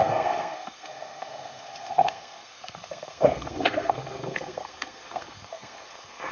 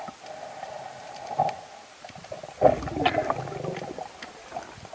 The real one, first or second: second